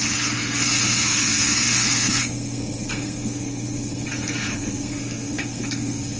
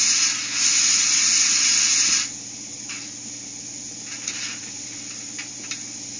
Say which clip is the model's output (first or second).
first